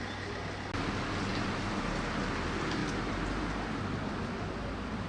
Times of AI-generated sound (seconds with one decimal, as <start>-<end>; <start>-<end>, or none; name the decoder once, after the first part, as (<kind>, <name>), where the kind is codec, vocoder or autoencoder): 1.3-2.4 (vocoder, BigVGAN v2); 2.8-3.8

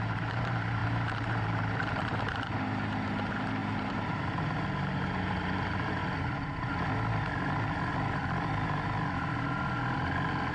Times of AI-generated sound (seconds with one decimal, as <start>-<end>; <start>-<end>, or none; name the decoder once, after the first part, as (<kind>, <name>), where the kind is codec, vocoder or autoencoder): 0.0-6.0 (vocoder, BigVGAN v2)

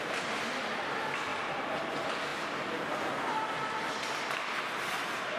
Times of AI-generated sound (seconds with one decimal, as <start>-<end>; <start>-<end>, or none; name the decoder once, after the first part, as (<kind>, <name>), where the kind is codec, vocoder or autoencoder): 1.3-1.9 (vocoder, BigVGAN v2)

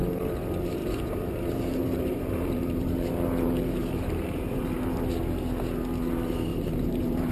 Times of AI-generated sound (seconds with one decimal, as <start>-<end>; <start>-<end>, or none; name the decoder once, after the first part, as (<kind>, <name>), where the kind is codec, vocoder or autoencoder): 0.8-5.1 (vocoder, BigVGAN v2); 6.5-7.3